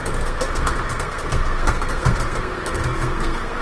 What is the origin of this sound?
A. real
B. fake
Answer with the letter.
B